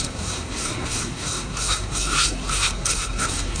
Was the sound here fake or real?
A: fake